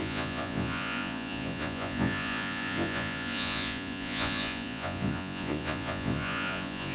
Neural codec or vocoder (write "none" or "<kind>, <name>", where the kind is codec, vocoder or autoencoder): vocoder, Vocos